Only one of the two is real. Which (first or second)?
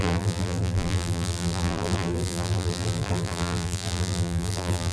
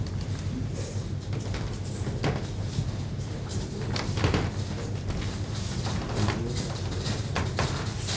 second